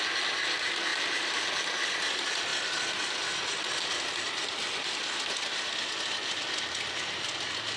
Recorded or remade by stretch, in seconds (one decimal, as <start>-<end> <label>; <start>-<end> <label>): 0.0-0.9 recorded; 0.9-1.4 remade; 1.4-7.8 recorded